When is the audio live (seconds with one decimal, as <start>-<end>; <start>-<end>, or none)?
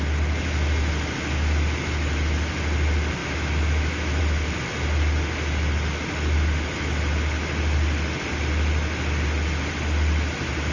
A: 0.0-3.2; 4.2-10.7